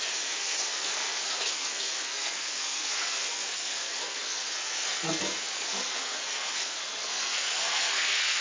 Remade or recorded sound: remade